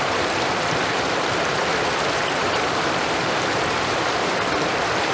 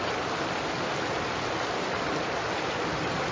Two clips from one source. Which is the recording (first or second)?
second